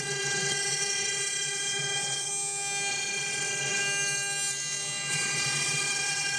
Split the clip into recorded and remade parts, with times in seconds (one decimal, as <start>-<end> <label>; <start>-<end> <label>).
0.0-2.3 remade; 2.3-2.9 recorded; 2.9-3.8 remade; 3.8-5.1 recorded; 5.1-6.4 remade